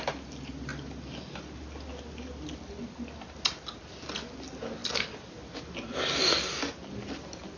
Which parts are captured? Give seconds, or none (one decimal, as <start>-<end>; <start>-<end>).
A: 0.0-7.6